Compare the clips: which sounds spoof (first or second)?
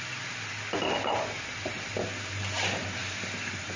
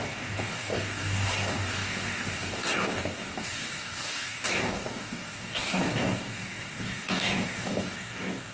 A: second